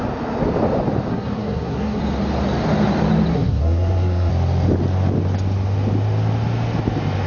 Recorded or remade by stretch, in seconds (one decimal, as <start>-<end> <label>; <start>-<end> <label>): 0.0-1.1 recorded; 1.1-2.0 remade; 2.0-3.3 recorded; 3.3-4.3 remade; 4.3-7.3 recorded